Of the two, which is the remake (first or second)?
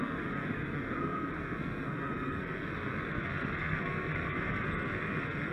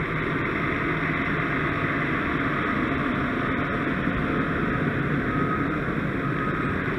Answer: first